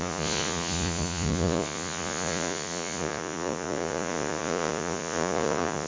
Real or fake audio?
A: fake